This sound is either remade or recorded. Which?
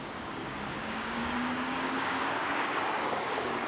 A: remade